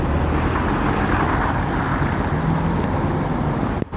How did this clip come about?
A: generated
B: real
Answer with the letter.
B